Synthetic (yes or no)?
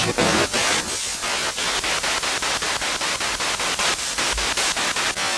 no